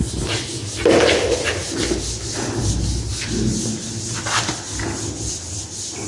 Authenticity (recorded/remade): recorded